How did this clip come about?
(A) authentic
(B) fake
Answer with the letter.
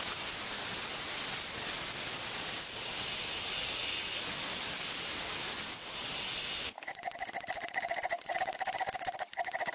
A